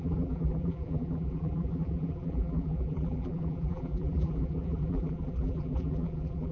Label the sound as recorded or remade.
remade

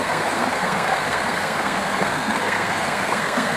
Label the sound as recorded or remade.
remade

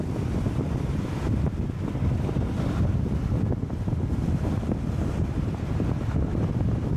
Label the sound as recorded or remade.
recorded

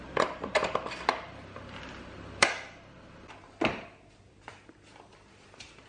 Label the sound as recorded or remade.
recorded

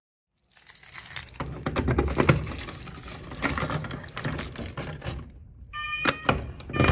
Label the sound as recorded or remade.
recorded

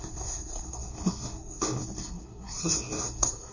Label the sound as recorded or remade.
remade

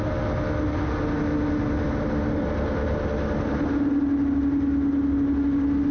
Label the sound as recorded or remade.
recorded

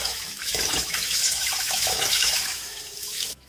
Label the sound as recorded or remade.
remade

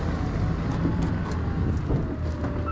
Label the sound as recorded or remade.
recorded